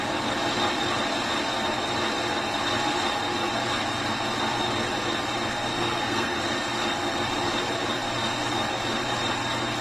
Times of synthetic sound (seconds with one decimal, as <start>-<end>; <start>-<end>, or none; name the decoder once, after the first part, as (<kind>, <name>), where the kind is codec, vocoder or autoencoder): 5.7-6.4 (codec, SNAC)